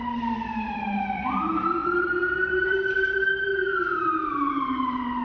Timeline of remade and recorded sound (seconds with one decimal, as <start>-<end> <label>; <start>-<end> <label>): 0.0-5.2 remade